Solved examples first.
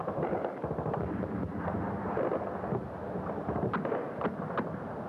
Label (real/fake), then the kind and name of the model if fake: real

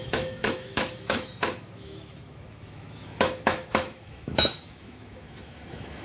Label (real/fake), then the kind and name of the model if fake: fake, autoencoder, DAC-VAE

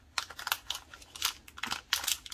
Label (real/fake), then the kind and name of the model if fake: real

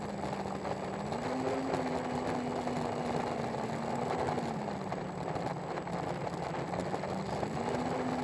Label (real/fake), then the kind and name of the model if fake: real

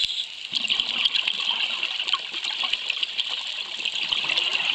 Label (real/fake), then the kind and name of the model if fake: real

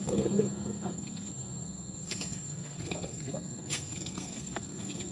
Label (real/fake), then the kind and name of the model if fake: fake, codec, SNAC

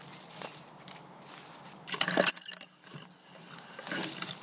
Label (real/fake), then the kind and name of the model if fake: real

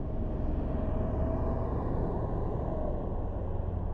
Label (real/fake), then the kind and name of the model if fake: real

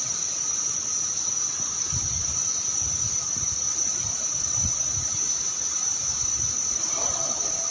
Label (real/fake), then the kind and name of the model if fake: fake, vocoder, BigVGAN v2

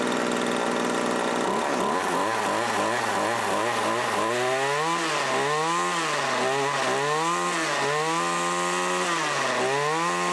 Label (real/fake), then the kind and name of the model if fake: real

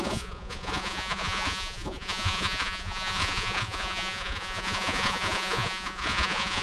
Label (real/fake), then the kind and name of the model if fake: fake, vocoder, Vocos